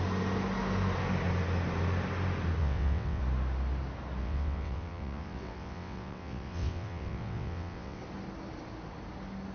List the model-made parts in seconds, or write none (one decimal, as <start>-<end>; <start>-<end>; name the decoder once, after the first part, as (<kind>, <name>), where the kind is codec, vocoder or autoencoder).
2.6-3.2 (vocoder, WaveNeXt); 4.2-8.0